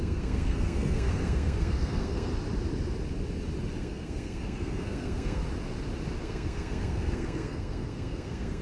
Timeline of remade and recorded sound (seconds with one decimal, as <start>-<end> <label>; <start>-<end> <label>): 0.0-2.3 remade; 2.3-3.8 recorded; 3.8-5.4 remade; 5.4-6.2 recorded; 6.2-8.6 remade